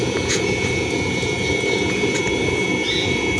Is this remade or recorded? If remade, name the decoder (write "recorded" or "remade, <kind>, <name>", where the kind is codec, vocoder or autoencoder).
remade, vocoder, Vocos